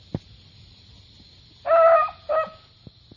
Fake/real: real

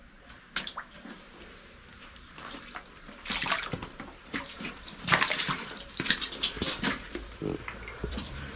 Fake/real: fake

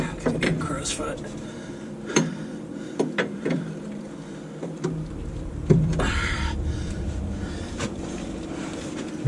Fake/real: fake